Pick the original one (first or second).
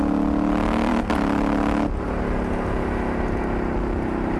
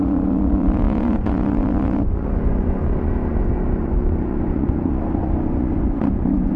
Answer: first